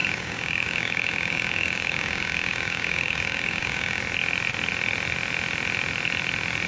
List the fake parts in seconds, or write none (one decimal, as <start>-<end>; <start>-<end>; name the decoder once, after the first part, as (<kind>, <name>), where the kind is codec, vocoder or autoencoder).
0.0-4.0 (codec, DAC)